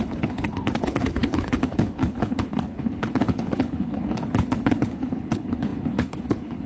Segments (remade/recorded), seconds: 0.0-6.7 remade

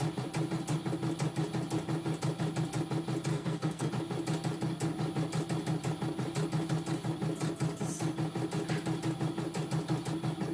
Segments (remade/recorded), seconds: 0.0-3.3 recorded; 3.3-3.9 remade; 3.9-10.5 recorded

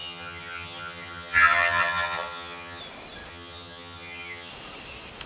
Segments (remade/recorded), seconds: 0.0-2.8 remade; 2.8-3.3 recorded; 3.3-4.5 remade; 4.5-5.3 recorded

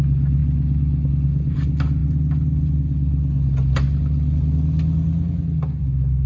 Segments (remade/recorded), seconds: 0.0-6.3 recorded

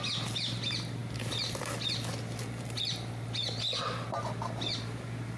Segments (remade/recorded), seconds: 0.0-5.4 recorded

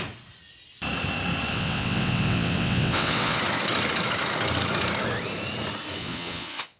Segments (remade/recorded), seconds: 0.0-1.5 recorded; 1.5-3.4 remade; 3.4-6.0 recorded; 6.0-6.8 remade

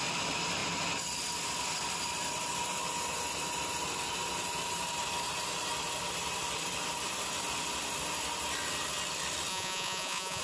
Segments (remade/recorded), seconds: 0.0-9.5 recorded; 9.5-10.4 remade

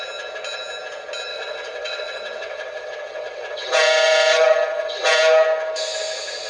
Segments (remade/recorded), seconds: 0.0-1.3 recorded; 1.3-5.2 remade; 5.2-6.5 recorded